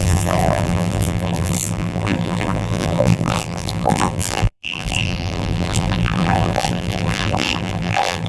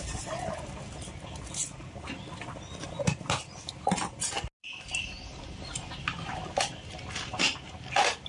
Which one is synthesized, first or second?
first